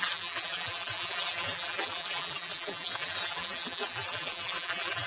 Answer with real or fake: fake